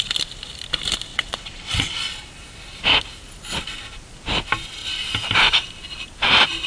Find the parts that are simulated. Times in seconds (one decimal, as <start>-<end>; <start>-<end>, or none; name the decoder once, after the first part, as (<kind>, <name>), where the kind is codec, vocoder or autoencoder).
1.1-2.0 (vocoder, WaveNeXt)